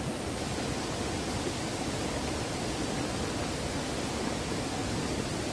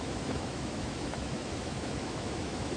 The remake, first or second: second